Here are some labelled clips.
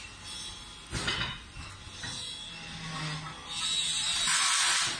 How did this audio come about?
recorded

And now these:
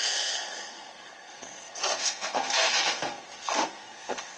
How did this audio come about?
remade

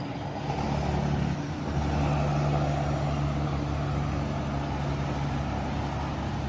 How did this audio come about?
recorded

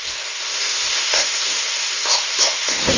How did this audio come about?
remade